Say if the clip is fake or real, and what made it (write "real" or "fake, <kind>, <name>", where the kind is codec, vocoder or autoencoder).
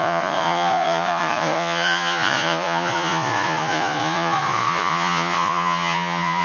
fake, vocoder, Vocos